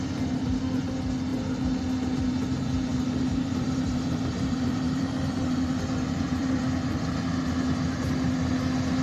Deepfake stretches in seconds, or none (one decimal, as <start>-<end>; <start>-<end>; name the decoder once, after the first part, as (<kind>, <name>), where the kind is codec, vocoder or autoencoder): 2.9-6.6 (vocoder, BigVGAN v2)